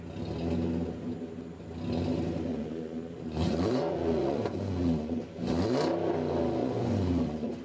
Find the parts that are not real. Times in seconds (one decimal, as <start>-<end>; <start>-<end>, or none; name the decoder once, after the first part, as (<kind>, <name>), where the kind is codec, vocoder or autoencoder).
2.5-5.2 (vocoder, Vocos); 6.6-7.6